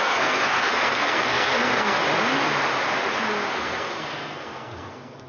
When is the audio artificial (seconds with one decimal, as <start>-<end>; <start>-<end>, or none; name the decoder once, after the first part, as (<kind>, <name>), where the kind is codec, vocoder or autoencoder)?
0.0-2.0 (codec, SNAC); 3.5-5.3

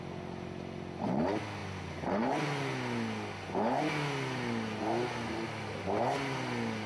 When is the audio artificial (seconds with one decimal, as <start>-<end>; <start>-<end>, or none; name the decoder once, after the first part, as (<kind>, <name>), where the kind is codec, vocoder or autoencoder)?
none

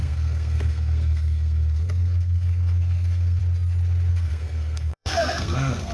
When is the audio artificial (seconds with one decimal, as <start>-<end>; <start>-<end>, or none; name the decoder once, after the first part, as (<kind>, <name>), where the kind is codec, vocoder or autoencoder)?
0.0-3.4 (codec, SNAC); 4.1-5.9

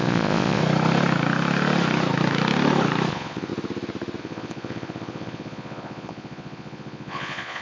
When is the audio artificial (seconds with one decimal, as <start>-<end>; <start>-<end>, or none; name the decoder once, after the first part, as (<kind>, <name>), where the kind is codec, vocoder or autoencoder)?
0.0-0.6 (vocoder, Vocos); 3.1-3.5; 4.2-7.6